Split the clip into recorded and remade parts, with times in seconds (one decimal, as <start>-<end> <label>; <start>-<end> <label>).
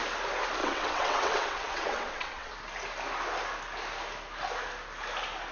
0.0-0.6 recorded; 0.6-2.5 remade; 2.5-5.5 recorded